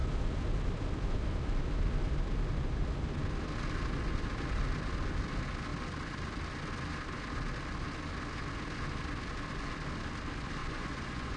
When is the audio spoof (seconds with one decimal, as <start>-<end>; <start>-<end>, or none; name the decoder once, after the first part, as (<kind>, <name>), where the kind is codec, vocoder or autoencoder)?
10.6-11.4 (vocoder, Vocos)